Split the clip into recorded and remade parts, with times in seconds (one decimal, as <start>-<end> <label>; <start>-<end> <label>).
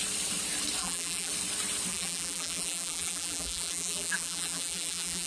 0.0-0.8 recorded; 0.8-1.3 remade; 1.3-1.9 recorded; 1.9-5.3 remade